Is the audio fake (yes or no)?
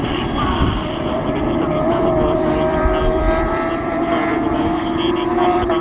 yes